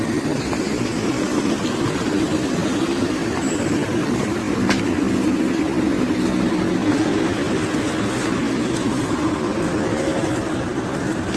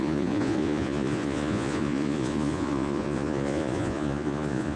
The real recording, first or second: first